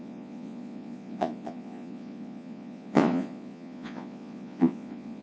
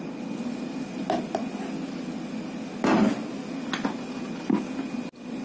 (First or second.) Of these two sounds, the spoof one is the first